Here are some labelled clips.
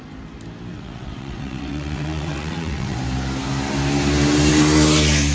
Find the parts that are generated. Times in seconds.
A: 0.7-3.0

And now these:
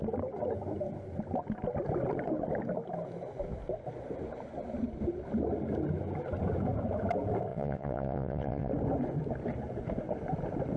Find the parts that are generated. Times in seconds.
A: 7.5-8.7

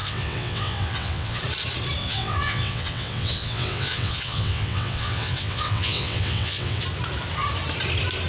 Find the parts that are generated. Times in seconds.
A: 0.0-1.4; 2.0-6.8

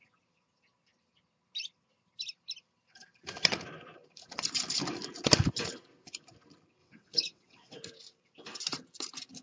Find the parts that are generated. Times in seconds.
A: 6.8-7.8

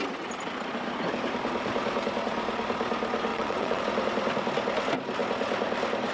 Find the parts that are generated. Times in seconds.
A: 3.3-3.8